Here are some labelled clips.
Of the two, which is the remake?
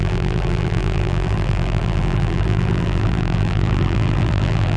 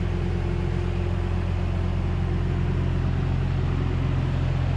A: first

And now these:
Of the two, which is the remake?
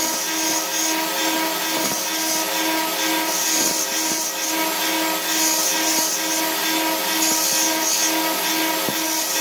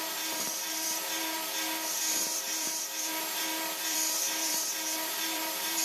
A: second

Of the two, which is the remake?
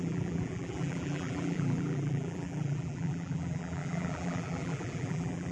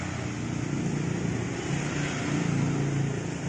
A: first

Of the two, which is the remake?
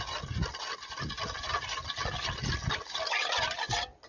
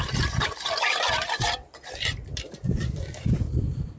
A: second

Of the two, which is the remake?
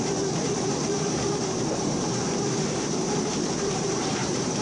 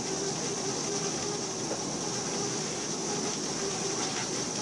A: first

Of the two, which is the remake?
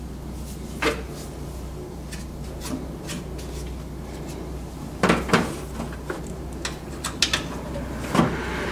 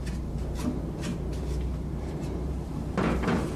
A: second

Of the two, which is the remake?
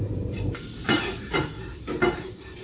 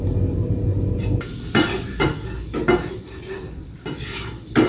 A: first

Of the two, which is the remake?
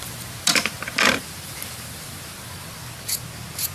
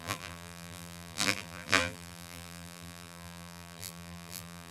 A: second